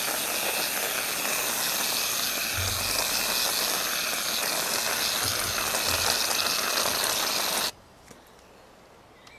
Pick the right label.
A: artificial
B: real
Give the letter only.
B